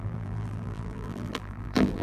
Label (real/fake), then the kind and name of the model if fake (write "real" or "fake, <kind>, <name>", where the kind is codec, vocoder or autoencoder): fake, vocoder, BigVGAN v2